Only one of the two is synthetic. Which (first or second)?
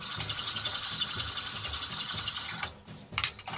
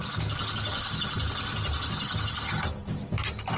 first